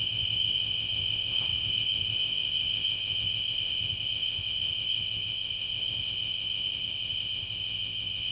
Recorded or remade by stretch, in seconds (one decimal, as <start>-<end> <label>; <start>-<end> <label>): 0.0-8.3 remade

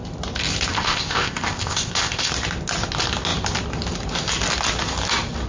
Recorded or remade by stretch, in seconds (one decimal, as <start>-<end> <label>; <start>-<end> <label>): 0.0-0.7 recorded; 0.7-2.3 remade; 2.3-5.5 recorded

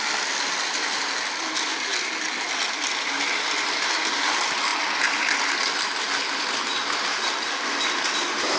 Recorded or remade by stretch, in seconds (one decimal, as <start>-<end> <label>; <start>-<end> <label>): 0.0-8.6 recorded

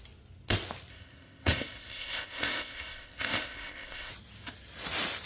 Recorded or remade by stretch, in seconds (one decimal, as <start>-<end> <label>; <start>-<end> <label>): 0.0-0.9 recorded; 0.9-4.1 remade; 4.1-5.3 recorded

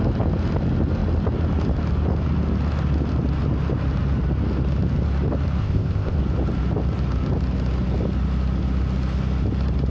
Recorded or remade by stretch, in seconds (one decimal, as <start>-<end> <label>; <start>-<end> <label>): 0.0-5.6 recorded; 5.6-6.2 remade; 6.2-9.9 recorded

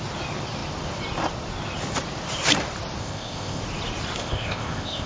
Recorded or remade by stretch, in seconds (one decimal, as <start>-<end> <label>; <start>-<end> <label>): 0.0-3.0 recorded; 3.0-3.6 remade; 3.6-4.2 recorded; 4.2-5.1 remade